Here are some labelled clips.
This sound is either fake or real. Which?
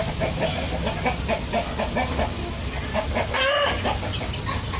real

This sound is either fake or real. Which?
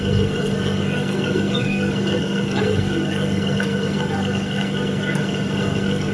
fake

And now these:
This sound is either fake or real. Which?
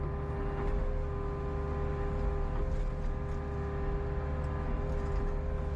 real